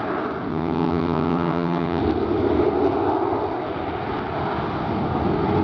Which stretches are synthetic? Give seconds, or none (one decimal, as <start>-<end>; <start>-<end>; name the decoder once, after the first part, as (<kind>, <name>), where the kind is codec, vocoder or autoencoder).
0.5-2.0 (vocoder, HiFi-GAN)